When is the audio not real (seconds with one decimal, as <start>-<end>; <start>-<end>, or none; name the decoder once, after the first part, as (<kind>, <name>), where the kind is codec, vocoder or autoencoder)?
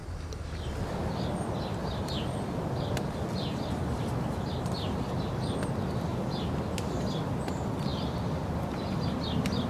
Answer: 0.0-4.7 (vocoder, BigVGAN v2); 6.1-7.5